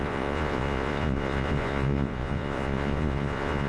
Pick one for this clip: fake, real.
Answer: fake